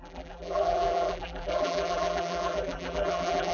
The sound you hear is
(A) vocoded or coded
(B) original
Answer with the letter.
A